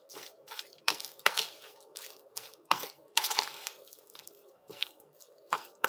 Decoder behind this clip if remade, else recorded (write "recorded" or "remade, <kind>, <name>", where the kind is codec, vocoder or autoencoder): remade, codec, SNAC